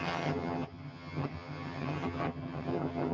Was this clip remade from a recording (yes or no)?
yes